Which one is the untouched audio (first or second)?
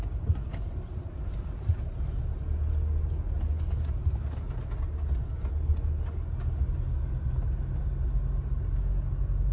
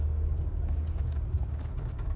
first